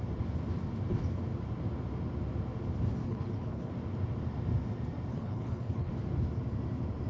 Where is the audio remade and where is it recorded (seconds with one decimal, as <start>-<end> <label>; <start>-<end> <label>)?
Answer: 0.0-3.0 recorded; 3.0-3.7 remade; 3.7-5.1 recorded; 5.1-5.9 remade; 5.9-7.1 recorded